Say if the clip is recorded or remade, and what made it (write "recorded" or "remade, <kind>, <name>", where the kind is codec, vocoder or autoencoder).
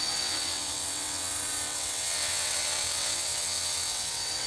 remade, vocoder, WaveNeXt